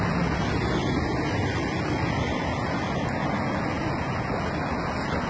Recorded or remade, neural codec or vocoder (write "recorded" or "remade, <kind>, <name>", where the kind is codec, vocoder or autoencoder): recorded